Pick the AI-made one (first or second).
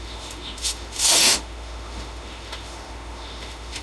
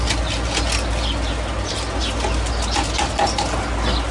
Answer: first